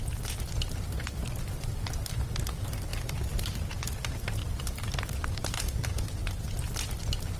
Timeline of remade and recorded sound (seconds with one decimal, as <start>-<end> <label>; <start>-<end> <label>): 0.0-2.9 recorded; 2.9-3.4 remade; 3.4-4.4 recorded; 4.4-6.1 remade; 6.1-7.4 recorded